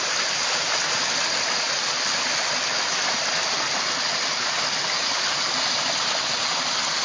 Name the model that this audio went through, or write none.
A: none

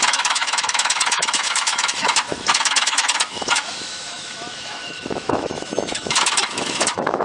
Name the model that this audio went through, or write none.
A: autoencoder, DAC-VAE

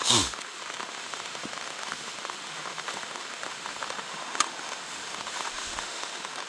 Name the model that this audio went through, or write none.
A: autoencoder, DAC-VAE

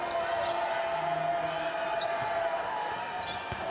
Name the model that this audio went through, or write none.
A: none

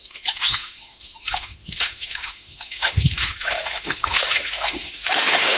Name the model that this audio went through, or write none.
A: autoencoder, DAC-VAE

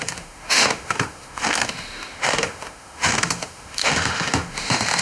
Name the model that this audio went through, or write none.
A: autoencoder, DAC-VAE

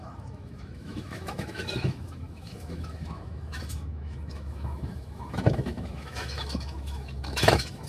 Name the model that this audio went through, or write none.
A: autoencoder, DAC-VAE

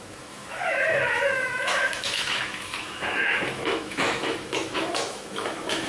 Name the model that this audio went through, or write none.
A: autoencoder, DAC-VAE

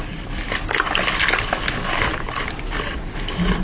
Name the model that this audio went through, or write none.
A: none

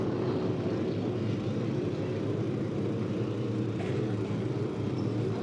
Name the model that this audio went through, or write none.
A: none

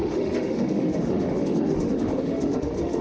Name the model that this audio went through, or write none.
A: autoencoder, DAC-VAE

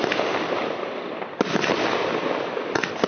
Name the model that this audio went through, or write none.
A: none